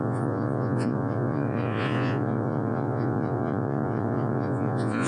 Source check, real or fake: fake